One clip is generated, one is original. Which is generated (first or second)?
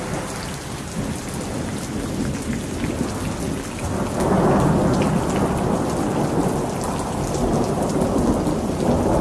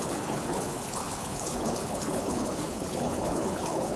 second